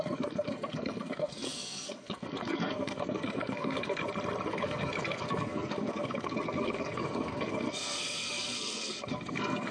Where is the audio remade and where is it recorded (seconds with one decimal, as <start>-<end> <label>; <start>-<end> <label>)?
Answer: 0.0-4.0 remade; 4.0-4.5 recorded; 4.5-9.7 remade